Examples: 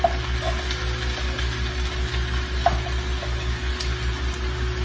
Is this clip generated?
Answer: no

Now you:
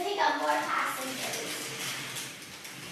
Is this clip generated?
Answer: no